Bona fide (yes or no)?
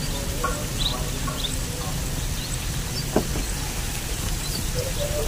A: yes